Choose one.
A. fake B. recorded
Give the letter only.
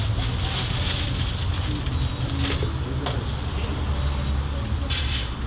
B